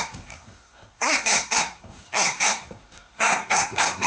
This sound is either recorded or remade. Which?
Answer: remade